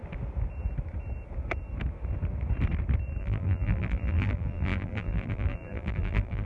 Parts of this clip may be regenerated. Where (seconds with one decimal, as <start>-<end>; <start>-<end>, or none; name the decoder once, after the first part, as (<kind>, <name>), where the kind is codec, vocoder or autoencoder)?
3.2-6.5 (vocoder, BigVGAN v2)